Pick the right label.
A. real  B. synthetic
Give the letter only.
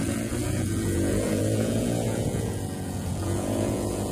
B